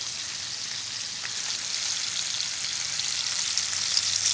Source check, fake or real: real